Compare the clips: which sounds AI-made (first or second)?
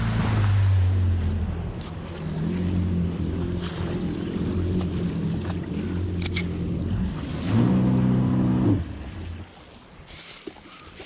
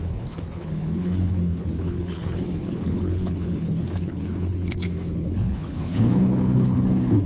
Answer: second